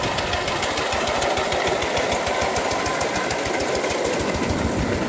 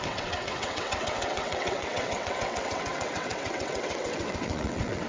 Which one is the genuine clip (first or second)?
first